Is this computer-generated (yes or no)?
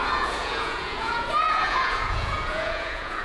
yes